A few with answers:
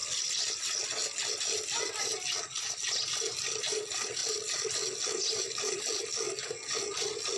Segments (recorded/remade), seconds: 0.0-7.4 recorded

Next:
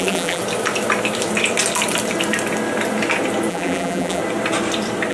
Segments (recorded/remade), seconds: 0.0-0.4 remade; 0.4-3.5 recorded; 3.5-4.2 remade; 4.2-5.1 recorded

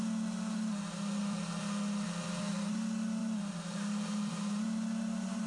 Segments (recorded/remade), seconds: 0.0-3.2 recorded; 3.2-5.5 remade

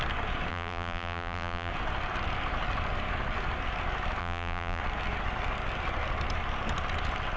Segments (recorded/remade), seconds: 0.0-0.5 recorded; 0.5-1.7 remade; 1.7-4.2 recorded; 4.2-4.8 remade; 4.8-7.4 recorded

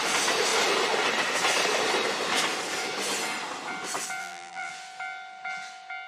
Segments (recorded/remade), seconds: 0.0-4.2 recorded; 4.2-4.7 remade; 4.7-6.1 recorded